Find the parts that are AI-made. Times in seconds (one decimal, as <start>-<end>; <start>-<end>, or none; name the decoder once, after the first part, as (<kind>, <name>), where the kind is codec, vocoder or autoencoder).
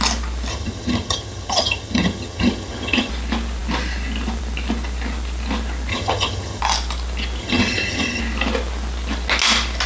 0.5-3.1 (vocoder, HiFi-GAN); 5.9-6.6; 7.4-8.2